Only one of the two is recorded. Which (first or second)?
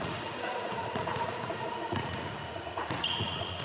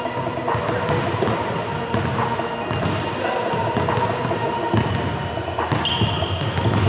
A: second